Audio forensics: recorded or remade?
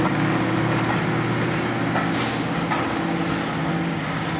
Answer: recorded